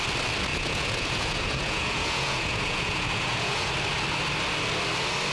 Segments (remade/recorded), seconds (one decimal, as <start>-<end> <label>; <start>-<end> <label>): 0.0-0.5 recorded; 0.5-3.7 remade; 3.7-5.3 recorded